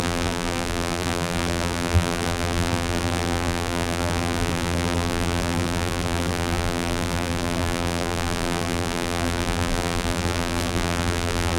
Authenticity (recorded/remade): remade